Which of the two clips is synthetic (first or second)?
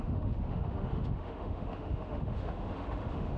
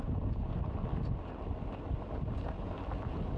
first